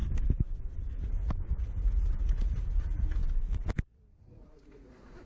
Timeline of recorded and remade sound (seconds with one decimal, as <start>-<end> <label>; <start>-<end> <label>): 0.0-1.1 recorded; 1.1-3.2 remade; 3.2-4.2 recorded; 4.2-5.3 remade